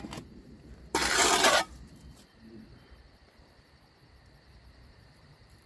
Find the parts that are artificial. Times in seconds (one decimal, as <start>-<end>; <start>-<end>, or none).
0.0-1.0; 4.4-5.7